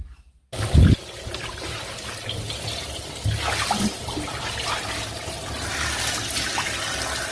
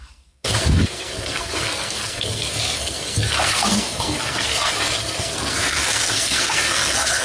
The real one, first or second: first